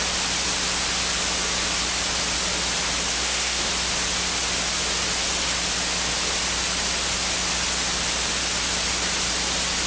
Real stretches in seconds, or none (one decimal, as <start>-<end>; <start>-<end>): 0.0-3.1; 3.7-9.9